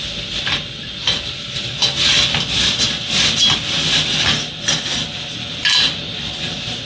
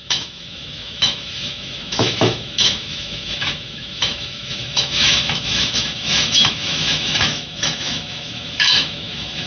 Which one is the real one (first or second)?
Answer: first